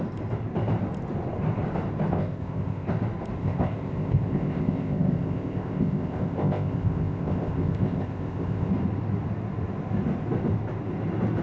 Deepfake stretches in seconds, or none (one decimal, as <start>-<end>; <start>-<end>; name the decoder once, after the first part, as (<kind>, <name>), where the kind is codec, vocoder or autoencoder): 2.1-2.9 (codec, ZipCodec); 3.4-8.7